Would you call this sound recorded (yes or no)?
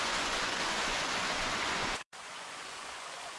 no